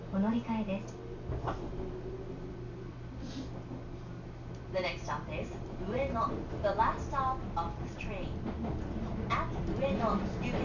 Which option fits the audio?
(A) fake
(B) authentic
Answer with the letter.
B